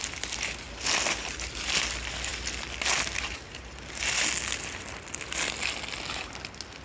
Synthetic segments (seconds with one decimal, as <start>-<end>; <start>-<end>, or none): none